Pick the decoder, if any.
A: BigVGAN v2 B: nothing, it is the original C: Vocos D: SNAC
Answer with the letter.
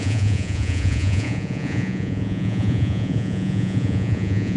C